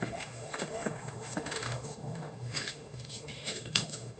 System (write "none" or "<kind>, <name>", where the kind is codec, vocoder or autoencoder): autoencoder, DAC-VAE